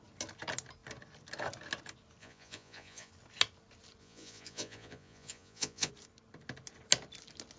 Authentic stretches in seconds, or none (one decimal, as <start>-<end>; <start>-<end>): 0.0-2.2; 3.1-4.0; 5.9-7.6

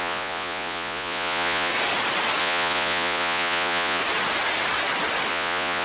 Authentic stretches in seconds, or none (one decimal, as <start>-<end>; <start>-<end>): 1.7-2.4; 4.0-5.3

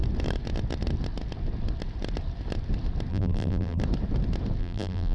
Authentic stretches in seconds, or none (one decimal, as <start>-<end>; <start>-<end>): 0.0-3.1; 3.8-4.6

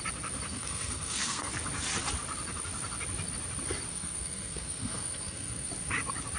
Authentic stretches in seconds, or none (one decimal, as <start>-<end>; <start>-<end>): 0.0-0.5; 1.5-3.9; 5.7-6.4

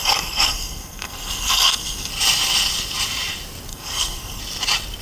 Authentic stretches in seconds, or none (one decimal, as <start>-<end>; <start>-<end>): 2.1-3.7; 4.4-5.0